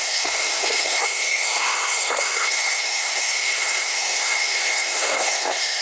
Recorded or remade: remade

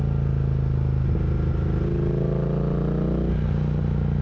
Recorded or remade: recorded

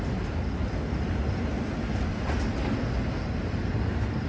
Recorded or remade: recorded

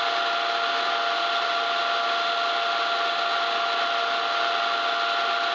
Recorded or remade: recorded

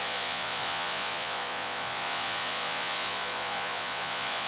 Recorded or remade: remade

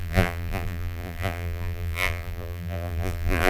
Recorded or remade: remade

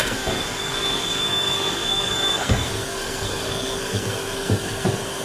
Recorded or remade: remade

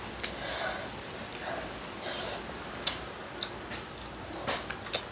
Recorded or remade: recorded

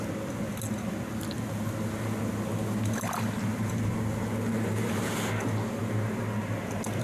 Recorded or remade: recorded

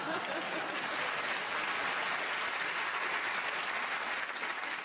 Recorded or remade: recorded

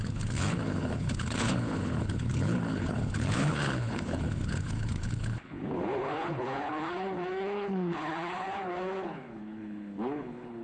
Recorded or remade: remade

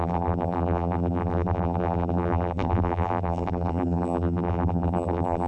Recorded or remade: remade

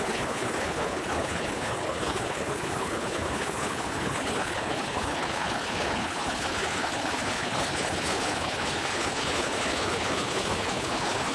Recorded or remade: remade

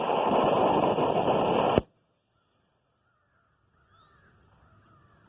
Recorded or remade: recorded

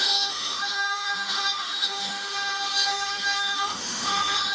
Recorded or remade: remade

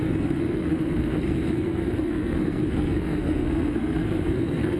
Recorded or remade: remade